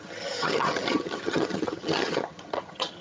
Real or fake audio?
fake